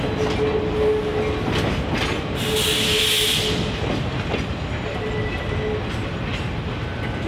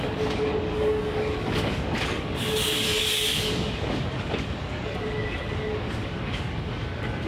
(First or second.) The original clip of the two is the first